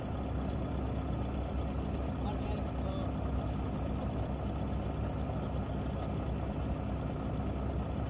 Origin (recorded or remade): recorded